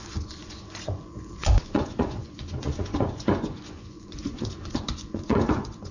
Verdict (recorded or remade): remade